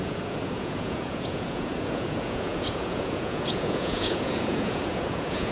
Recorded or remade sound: remade